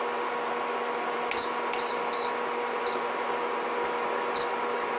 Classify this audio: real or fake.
real